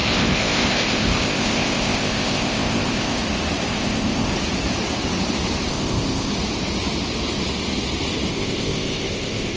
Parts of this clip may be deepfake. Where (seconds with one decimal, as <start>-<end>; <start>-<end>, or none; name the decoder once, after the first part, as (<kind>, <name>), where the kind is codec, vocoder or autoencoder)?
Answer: 0.0-3.2 (codec, ZipCodec); 3.8-4.3; 5.7-6.3; 8.3-9.6